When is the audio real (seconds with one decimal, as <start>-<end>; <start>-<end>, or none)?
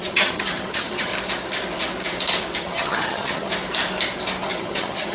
1.1-2.6; 3.5-4.4